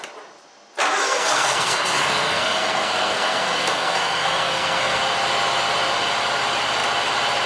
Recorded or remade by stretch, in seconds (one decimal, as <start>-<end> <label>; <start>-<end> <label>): 0.0-1.0 recorded; 1.0-5.0 remade; 5.0-7.5 recorded